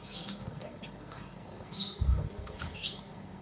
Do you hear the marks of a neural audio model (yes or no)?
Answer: yes